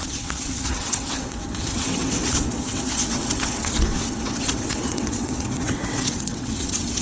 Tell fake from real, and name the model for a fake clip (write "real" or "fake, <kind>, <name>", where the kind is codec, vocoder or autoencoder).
fake, vocoder, WaveNeXt